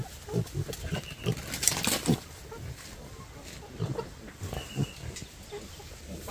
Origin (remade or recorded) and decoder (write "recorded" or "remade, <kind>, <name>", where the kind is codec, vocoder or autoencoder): recorded